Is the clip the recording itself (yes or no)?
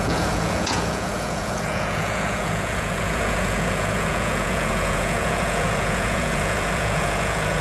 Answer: no